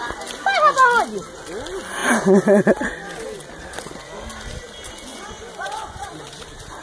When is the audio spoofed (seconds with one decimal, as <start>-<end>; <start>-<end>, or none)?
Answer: 5.1-6.1